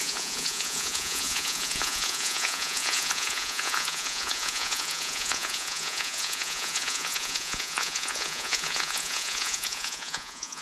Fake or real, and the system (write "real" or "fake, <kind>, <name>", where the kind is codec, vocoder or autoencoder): fake, vocoder, Vocos